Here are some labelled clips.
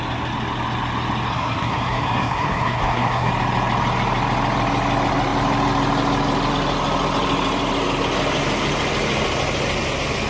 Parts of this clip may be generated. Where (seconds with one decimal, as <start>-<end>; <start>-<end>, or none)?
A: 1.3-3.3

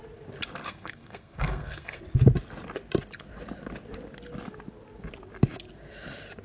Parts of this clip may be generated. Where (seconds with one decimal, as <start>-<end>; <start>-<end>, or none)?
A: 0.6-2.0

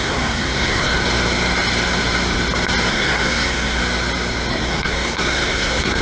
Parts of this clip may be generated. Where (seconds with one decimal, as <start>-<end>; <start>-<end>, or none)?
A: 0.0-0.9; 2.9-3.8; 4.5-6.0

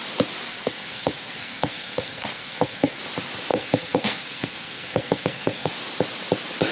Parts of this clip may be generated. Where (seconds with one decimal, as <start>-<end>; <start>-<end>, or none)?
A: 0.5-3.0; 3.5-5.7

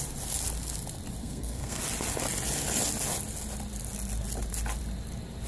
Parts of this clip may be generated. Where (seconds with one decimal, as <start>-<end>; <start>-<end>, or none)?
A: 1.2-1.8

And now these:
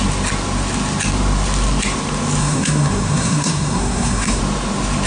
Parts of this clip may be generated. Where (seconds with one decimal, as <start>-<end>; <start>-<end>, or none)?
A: 2.4-4.4

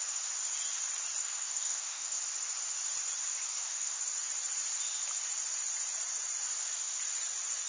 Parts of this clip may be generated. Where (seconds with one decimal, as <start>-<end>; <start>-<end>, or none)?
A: 1.2-2.2; 3.5-4.0

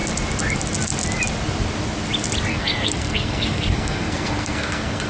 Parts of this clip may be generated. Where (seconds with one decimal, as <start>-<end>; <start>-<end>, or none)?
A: 2.5-5.1